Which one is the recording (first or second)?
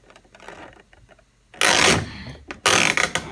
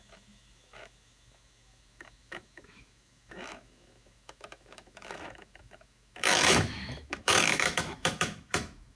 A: first